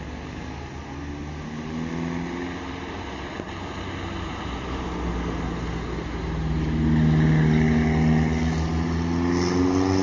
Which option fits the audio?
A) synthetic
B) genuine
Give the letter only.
B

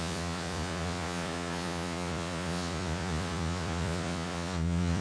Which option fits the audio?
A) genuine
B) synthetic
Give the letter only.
B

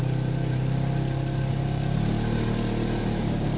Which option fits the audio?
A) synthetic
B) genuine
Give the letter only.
B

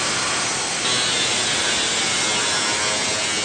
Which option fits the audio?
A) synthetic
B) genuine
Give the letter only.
B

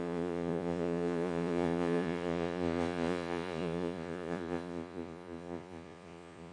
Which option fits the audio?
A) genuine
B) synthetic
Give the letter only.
B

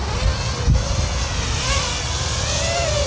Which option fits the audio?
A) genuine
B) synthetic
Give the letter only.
A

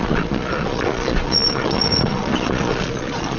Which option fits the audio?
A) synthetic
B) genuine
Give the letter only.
A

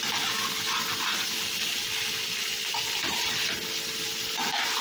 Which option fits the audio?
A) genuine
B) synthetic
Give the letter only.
A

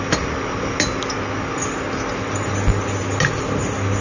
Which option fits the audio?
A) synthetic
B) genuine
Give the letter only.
B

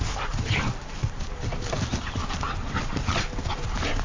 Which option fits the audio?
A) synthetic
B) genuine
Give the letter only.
B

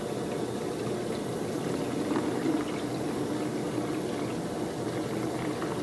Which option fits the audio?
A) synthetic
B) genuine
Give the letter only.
B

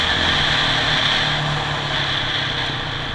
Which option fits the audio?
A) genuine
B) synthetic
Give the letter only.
A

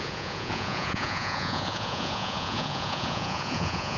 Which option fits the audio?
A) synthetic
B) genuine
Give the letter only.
A